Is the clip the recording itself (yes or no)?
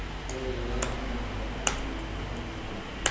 yes